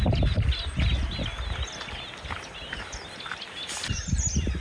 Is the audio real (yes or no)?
yes